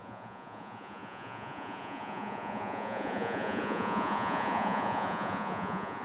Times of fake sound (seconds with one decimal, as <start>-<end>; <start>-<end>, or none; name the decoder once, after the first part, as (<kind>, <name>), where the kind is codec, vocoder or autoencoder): 0.0-6.0 (vocoder, Vocos)